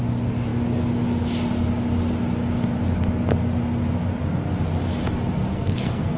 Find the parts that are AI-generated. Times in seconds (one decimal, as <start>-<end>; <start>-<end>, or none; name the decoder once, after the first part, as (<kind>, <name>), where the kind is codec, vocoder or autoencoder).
5.5-6.2 (codec, SNAC)